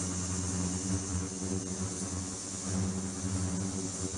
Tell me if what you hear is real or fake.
real